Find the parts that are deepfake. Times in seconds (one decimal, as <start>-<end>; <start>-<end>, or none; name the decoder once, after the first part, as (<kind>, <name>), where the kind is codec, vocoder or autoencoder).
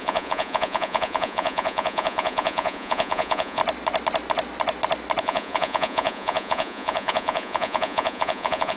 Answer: 0.0-3.6 (vocoder, Vocos); 5.2-8.8